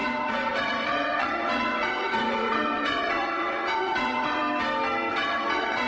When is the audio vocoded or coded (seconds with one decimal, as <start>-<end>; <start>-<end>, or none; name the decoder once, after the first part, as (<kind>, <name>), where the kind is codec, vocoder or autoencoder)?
0.0-4.4 (vocoder, WaveNeXt); 5.1-5.9